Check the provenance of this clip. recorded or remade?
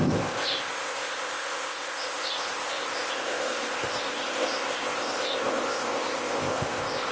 remade